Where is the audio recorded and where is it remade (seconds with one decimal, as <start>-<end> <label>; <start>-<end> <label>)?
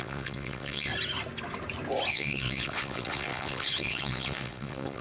0.0-0.9 remade; 0.9-2.1 recorded; 2.1-5.0 remade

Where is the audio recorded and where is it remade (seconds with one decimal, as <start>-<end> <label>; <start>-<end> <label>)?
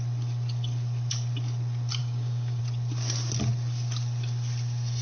0.0-2.0 recorded; 2.0-2.6 remade; 2.6-5.0 recorded